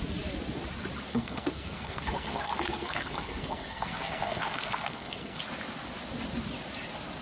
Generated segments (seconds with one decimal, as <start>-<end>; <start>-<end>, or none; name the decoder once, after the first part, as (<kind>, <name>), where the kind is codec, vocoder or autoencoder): 1.1-5.4 (codec, SNAC)